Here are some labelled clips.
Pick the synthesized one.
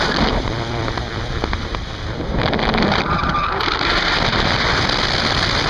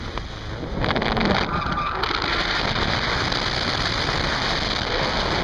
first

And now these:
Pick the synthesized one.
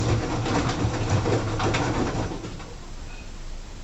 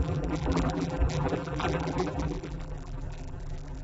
second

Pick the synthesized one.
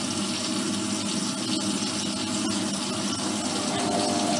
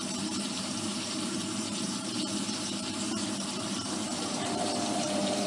second